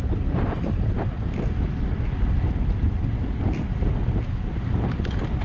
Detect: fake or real real